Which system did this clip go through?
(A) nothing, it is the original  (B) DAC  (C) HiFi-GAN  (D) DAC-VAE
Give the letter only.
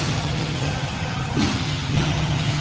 C